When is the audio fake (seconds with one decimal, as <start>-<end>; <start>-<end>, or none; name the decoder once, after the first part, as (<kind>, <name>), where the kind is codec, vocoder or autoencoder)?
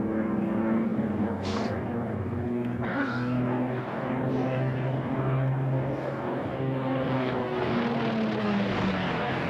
0.0-7.8 (codec, DAC); 8.4-9.5